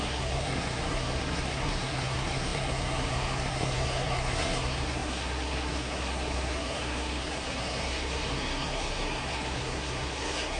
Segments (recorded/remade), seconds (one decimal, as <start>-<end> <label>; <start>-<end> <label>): 0.0-10.6 remade

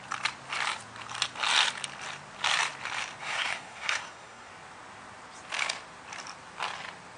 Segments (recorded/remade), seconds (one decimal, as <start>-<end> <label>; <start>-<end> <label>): 0.0-3.2 recorded; 3.2-4.5 remade; 4.5-7.2 recorded

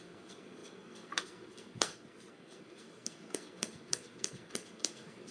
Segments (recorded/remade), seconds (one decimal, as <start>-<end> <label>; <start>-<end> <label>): 0.0-5.3 remade

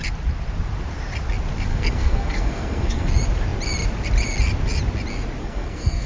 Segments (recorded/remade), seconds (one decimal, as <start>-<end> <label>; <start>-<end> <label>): 0.0-1.7 recorded; 1.7-3.1 remade; 3.1-5.4 recorded; 5.4-6.1 remade

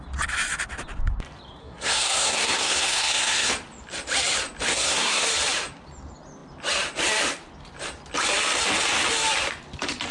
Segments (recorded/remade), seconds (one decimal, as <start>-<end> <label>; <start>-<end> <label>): 0.0-1.6 recorded; 1.6-3.5 remade; 3.5-4.7 recorded; 4.7-5.2 remade; 5.2-10.1 recorded

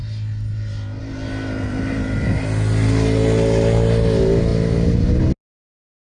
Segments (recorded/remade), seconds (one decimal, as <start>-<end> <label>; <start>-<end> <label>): 0.0-6.1 recorded

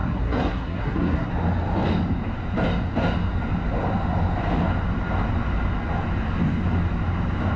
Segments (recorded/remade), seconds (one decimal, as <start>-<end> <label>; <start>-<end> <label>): 0.0-1.3 remade; 1.3-7.6 recorded